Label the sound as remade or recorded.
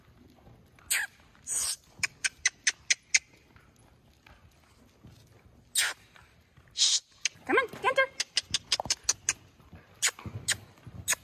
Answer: recorded